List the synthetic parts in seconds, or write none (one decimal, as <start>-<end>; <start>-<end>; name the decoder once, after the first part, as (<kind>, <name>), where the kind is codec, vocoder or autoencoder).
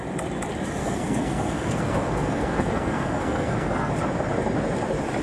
0.8-3.9 (codec, SNAC)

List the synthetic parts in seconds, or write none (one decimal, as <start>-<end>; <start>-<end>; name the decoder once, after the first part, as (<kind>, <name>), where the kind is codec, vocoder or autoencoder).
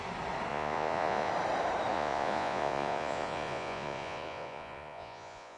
0.5-1.3 (vocoder, Vocos); 1.9-5.6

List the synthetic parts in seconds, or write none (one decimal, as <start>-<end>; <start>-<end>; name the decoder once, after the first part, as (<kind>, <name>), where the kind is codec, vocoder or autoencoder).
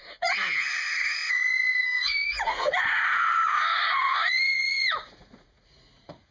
0.0-6.3 (vocoder, Vocos)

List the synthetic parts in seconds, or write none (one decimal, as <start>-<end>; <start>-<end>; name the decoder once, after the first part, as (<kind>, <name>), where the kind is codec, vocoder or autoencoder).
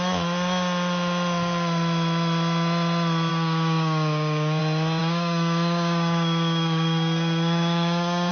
3.3-4.6 (codec, DAC); 5.0-8.3